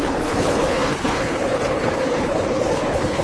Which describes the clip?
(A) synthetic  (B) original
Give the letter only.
A